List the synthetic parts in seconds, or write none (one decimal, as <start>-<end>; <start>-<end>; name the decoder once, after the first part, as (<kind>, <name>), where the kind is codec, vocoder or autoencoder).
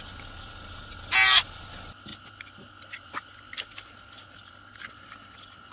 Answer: none